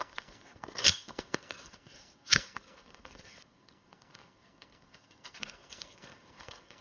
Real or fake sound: fake